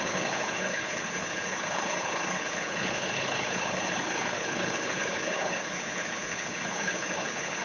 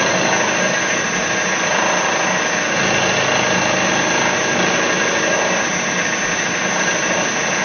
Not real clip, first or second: first